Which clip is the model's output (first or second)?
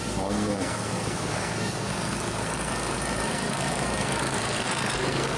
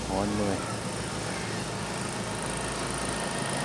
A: first